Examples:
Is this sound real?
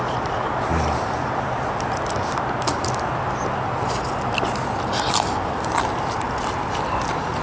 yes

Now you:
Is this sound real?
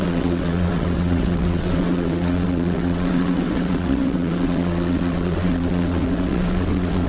no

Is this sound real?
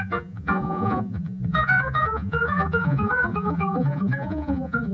no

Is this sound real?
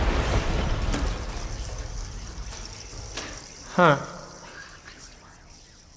no